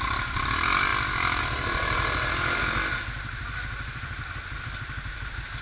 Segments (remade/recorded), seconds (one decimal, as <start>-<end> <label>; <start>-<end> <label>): 0.0-5.6 recorded

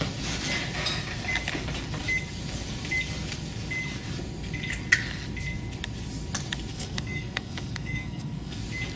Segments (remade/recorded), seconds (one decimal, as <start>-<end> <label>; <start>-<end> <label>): 0.0-6.7 recorded; 6.7-8.6 remade; 8.6-9.0 recorded

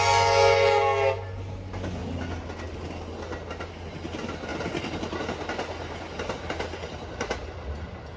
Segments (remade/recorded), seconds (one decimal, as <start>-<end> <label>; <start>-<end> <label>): 0.0-8.2 recorded

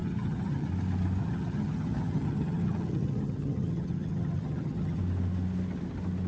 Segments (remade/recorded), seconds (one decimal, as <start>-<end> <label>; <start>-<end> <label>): 0.0-0.7 remade; 0.7-1.2 recorded; 1.2-5.0 remade; 5.0-6.3 recorded

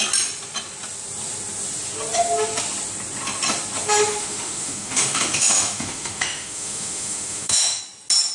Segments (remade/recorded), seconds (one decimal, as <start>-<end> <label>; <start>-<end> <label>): 0.0-4.1 recorded; 4.1-7.8 remade; 7.8-8.3 recorded

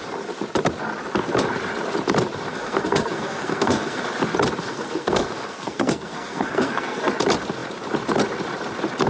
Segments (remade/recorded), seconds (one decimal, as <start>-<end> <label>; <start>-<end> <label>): 0.0-2.5 recorded; 2.5-4.0 remade; 4.0-4.7 recorded; 4.7-7.0 remade; 7.0-9.1 recorded

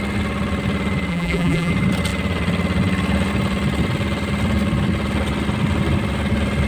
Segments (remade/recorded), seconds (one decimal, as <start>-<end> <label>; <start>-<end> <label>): 0.0-1.1 recorded; 1.1-1.7 remade; 1.7-6.7 recorded

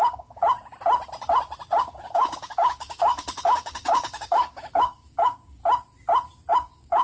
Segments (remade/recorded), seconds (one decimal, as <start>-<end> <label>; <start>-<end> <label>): 0.0-0.4 remade; 0.4-1.8 recorded; 1.8-5.6 remade; 5.6-6.5 recorded; 6.5-7.0 remade